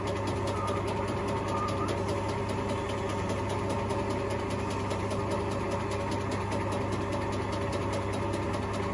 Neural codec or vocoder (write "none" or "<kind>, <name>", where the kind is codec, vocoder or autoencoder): none